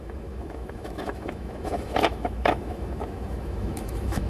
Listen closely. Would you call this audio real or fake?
fake